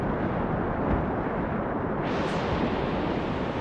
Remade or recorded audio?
recorded